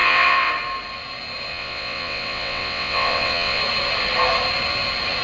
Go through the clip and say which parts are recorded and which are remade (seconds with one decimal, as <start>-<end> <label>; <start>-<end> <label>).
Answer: 0.0-0.5 remade; 0.5-1.5 recorded; 1.5-3.6 remade; 3.6-5.2 recorded